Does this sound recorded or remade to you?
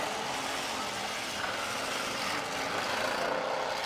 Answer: recorded